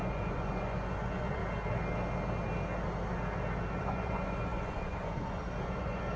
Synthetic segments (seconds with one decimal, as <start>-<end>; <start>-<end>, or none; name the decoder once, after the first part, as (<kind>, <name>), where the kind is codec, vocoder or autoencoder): 0.0-1.4 (vocoder, Vocos); 3.8-6.2